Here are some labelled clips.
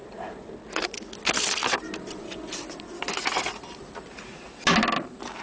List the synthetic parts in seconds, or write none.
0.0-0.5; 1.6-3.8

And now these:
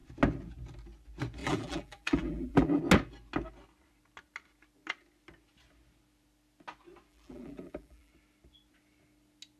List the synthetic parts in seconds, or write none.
1.4-2.8; 7.1-8.1

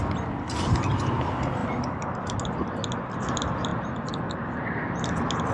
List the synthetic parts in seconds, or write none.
none

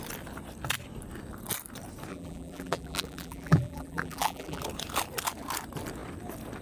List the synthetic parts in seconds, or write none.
2.1-4.6

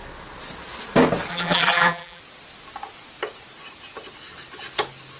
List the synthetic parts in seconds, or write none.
1.3-2.2